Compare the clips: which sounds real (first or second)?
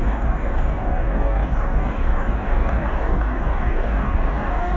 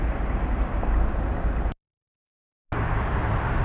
second